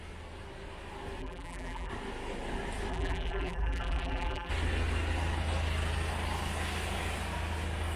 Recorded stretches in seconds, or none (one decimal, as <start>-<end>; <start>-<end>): 0.0-1.2; 1.9-2.9; 4.5-8.0